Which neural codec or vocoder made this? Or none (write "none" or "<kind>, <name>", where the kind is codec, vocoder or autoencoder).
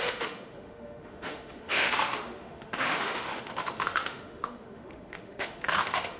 autoencoder, DAC-VAE